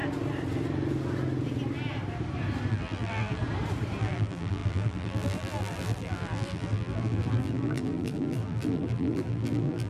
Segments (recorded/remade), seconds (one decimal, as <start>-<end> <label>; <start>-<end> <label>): 0.0-2.7 recorded; 2.7-3.4 remade; 3.4-4.0 recorded; 4.0-9.9 remade